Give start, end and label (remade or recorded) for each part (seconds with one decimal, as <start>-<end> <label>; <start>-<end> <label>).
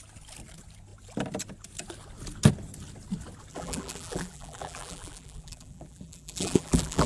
0.0-3.5 recorded; 3.5-7.1 remade